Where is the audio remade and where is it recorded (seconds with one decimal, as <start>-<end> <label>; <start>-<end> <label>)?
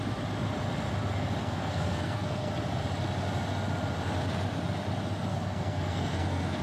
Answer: 0.0-1.4 recorded; 1.4-2.5 remade; 2.5-5.3 recorded; 5.3-6.6 remade